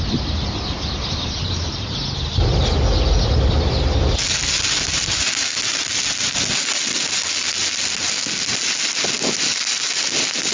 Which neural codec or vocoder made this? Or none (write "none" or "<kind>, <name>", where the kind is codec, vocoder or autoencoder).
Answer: none